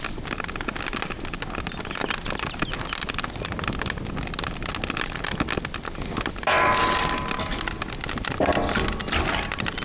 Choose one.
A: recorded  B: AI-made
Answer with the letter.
A